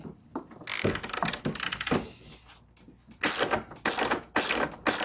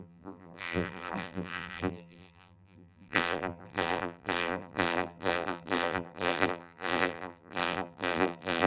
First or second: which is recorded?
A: first